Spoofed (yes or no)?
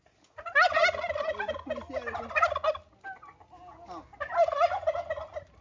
no